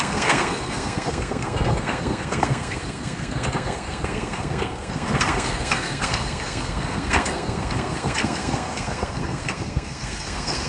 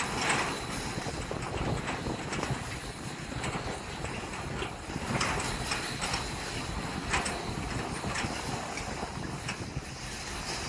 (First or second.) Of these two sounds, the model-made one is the first